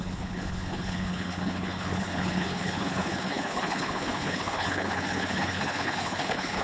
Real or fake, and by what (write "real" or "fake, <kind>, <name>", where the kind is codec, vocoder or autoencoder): fake, codec, HILCodec